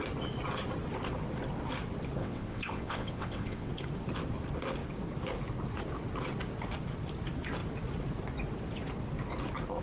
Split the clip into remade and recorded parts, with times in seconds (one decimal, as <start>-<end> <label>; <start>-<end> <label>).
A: 0.0-2.2 recorded; 2.2-3.7 remade; 3.7-9.8 recorded